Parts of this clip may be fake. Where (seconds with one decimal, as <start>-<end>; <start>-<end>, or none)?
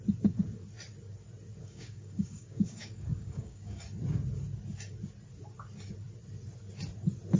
1.6-3.8